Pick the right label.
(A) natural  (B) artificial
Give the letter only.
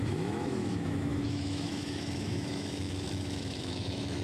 B